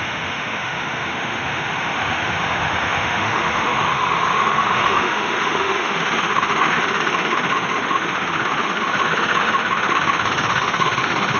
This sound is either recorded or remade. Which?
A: remade